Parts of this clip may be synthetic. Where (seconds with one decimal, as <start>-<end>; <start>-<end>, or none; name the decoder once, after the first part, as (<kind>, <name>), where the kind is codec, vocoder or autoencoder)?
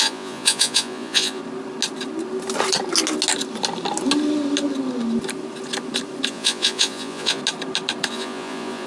0.0-1.4 (vocoder, Vocos); 6.3-7.4; 8.1-8.9